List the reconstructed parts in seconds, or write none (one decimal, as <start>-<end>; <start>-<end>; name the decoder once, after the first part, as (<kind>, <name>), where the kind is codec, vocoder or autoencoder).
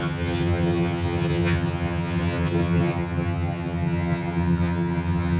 0.0-5.4 (vocoder, HiFi-GAN)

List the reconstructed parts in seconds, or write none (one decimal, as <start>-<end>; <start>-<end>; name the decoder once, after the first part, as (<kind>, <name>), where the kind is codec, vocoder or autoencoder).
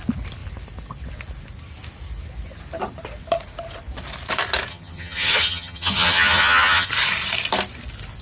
4.7-6.9 (vocoder, HiFi-GAN)